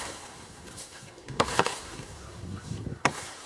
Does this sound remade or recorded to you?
remade